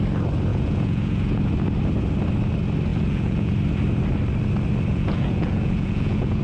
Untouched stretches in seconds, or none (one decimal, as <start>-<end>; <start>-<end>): 0.0-0.5; 1.4-2.9; 3.5-4.9